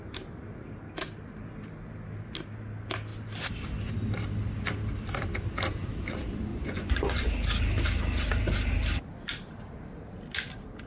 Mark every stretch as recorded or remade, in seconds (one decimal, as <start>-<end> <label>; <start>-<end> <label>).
0.0-6.5 recorded; 6.5-7.3 remade; 7.3-10.9 recorded

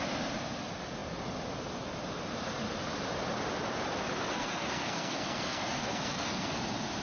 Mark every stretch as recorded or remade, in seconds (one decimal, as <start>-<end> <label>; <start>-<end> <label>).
0.0-4.3 recorded; 4.3-6.6 remade; 6.6-7.0 recorded

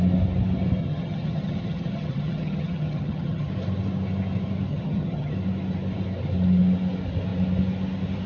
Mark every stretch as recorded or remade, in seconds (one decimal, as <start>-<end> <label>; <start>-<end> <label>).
0.0-0.8 recorded; 0.8-3.5 remade; 3.5-4.7 recorded; 4.7-5.3 remade; 5.3-8.3 recorded

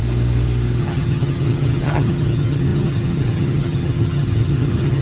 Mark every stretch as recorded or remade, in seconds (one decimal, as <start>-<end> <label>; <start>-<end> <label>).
0.0-0.8 recorded; 0.8-5.0 remade

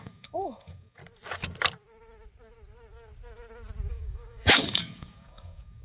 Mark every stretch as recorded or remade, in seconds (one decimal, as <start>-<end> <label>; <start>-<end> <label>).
0.0-1.0 remade; 1.0-3.9 recorded; 3.9-5.8 remade